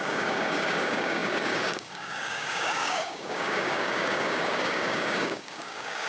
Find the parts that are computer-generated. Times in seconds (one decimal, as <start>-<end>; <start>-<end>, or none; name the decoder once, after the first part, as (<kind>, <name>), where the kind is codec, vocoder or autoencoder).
0.0-6.1 (codec, DAC)